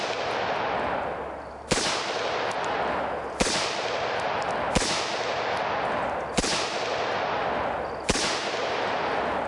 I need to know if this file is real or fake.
real